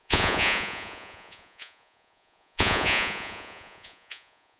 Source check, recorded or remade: remade